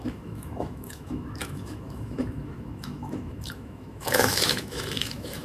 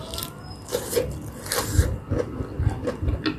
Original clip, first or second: second